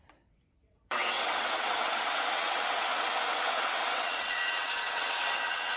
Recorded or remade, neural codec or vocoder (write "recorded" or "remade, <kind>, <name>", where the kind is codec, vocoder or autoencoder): remade, vocoder, WaveNeXt